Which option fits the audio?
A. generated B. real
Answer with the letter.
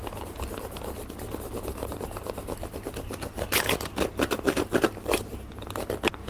B